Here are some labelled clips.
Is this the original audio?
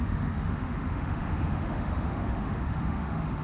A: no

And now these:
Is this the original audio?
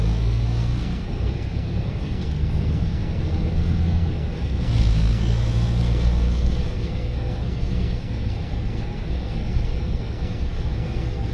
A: no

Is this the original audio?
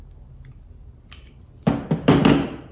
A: yes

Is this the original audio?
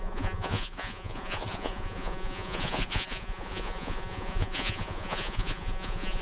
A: no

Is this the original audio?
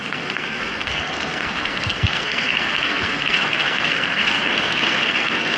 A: no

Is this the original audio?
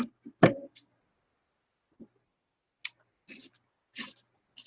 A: no